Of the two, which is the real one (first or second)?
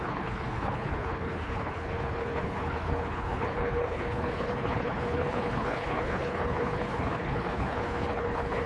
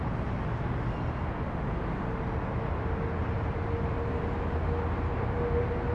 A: second